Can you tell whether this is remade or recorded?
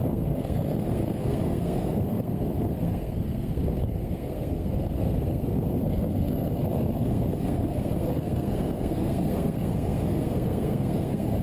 remade